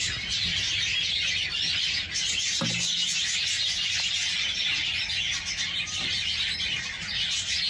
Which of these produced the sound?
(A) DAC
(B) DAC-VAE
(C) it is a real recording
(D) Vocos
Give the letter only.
C